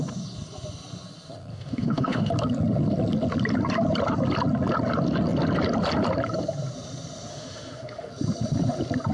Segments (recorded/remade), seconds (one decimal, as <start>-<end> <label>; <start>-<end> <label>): 0.0-1.5 recorded; 1.5-2.3 remade; 2.3-7.3 recorded; 7.3-8.1 remade; 8.1-9.1 recorded